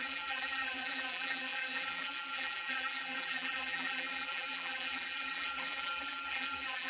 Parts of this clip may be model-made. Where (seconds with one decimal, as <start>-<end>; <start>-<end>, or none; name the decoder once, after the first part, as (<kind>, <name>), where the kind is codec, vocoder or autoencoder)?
0.0-6.9 (vocoder, BigVGAN v2)